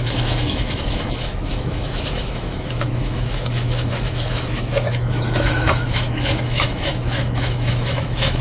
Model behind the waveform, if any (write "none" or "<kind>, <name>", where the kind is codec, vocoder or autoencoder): autoencoder, DAC-VAE